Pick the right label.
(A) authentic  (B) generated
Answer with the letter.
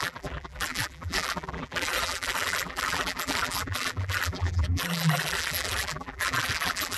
B